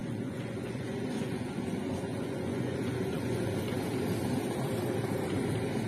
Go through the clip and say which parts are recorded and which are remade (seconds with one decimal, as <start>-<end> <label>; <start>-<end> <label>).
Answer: 0.0-3.5 remade; 3.5-5.9 recorded

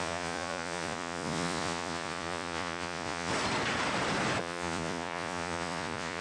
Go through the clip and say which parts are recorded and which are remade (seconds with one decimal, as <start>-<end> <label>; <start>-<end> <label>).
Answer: 0.0-3.3 remade; 3.3-4.4 recorded; 4.4-6.2 remade

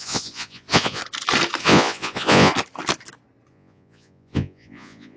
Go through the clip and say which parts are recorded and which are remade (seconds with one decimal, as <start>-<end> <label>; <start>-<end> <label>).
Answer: 0.0-1.0 remade; 1.0-1.6 recorded; 1.6-2.5 remade; 2.5-3.5 recorded; 3.5-5.2 remade

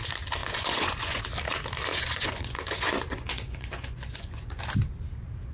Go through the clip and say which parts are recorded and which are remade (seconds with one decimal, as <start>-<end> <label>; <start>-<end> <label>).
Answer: 0.0-0.4 recorded; 0.4-1.2 remade; 1.2-1.9 recorded; 1.9-4.6 remade; 4.6-5.5 recorded

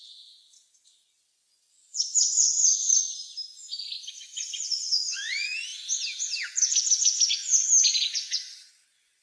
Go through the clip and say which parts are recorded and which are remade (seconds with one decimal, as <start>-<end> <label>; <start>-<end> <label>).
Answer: 0.0-2.9 remade; 2.9-4.1 recorded; 4.1-5.7 remade; 5.7-8.0 recorded; 8.0-9.2 remade

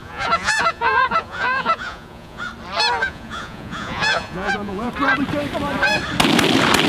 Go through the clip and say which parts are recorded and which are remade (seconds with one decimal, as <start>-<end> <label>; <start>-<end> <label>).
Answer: 0.0-2.5 remade; 2.5-3.0 recorded; 3.0-4.9 remade; 4.9-6.9 recorded